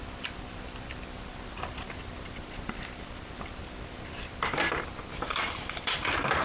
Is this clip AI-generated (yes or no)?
no